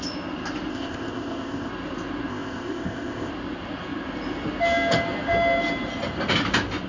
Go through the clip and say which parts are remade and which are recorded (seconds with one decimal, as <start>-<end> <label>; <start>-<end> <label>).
0.0-0.7 recorded; 0.7-1.7 remade; 1.7-2.3 recorded; 2.3-3.3 remade; 3.3-6.9 recorded